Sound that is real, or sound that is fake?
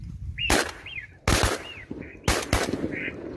real